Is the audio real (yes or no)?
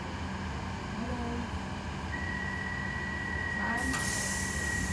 yes